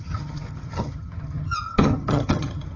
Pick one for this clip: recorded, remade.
remade